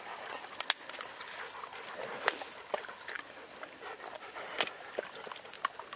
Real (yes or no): yes